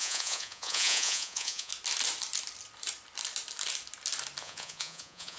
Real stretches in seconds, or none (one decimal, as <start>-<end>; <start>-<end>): 1.7-4.4